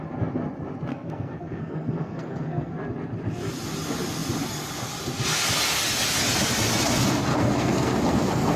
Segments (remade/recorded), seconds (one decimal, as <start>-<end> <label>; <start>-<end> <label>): 0.0-0.9 recorded; 0.9-2.7 remade; 2.7-7.3 recorded; 7.3-8.6 remade